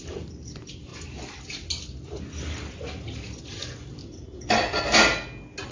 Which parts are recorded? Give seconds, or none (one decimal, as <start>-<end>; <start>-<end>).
0.0-4.0; 4.8-5.7